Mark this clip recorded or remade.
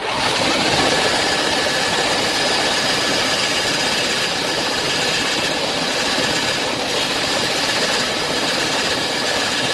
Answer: recorded